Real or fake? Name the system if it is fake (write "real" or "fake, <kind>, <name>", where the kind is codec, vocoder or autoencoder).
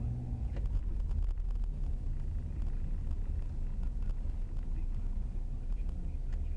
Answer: real